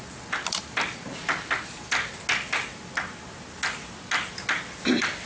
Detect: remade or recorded recorded